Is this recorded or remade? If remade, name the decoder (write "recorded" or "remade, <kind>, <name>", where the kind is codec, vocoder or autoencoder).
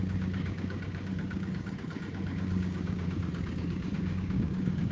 remade, codec, DAC